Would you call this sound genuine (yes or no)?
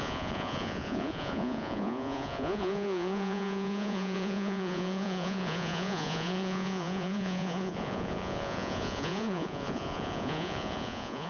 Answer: no